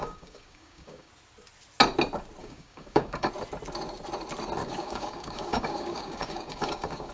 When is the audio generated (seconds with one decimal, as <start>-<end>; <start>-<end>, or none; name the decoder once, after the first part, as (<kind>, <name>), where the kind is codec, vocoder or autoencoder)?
0.0-1.1 (codec, DAC); 2.4-3.3; 4.6-7.1